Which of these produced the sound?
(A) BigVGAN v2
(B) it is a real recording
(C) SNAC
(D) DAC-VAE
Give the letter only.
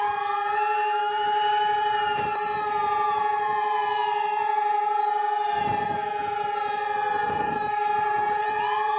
A